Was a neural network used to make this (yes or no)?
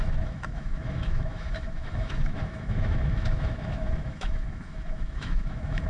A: yes